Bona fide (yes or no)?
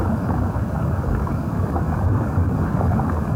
no